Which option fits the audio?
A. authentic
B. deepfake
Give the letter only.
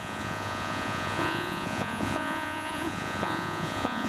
B